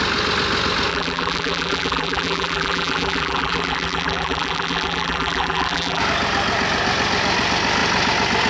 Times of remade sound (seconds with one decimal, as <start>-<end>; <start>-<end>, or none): 0.9-6.0